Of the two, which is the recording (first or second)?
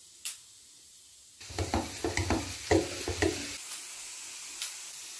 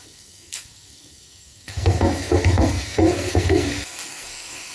first